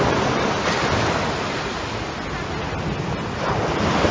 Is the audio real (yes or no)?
yes